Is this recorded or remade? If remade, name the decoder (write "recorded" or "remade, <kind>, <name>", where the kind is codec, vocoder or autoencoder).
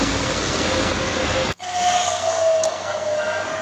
remade, codec, SNAC